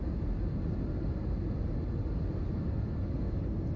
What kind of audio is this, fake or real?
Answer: fake